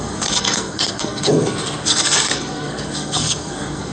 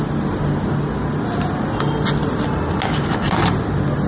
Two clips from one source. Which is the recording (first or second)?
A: second